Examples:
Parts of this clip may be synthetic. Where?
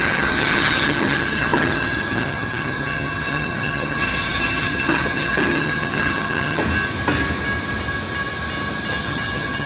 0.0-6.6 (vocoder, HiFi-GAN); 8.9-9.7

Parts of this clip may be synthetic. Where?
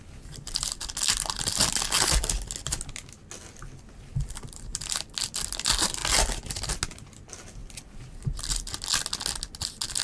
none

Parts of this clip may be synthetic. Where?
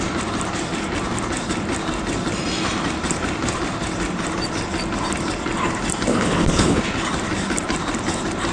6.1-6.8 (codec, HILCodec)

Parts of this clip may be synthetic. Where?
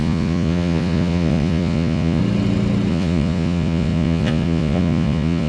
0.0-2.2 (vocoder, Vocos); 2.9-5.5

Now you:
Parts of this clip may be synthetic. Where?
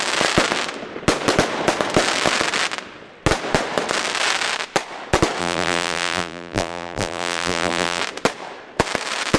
5.4-8.0 (vocoder, BigVGAN v2)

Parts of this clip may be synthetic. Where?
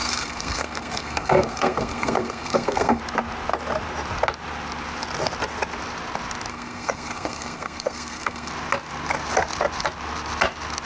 0.0-3.0 (codec, SNAC); 6.5-8.5